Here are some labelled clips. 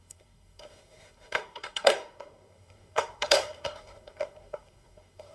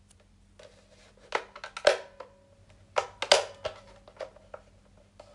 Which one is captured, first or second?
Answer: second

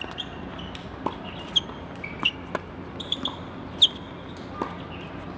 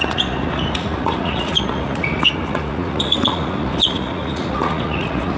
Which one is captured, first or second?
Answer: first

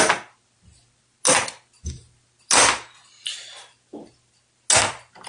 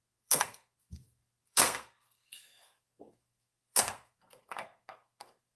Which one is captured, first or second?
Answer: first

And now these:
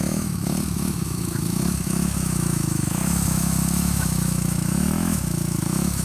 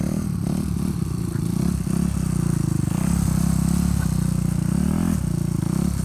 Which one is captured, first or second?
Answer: second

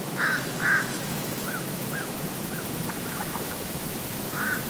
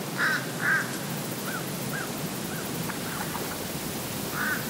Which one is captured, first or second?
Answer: second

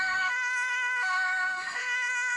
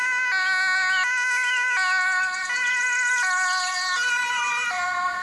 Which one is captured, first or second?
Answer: second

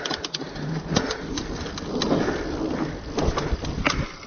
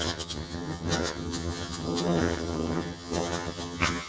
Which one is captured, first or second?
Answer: first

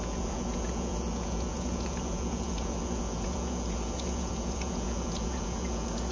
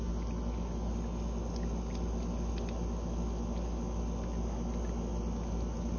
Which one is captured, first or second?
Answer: second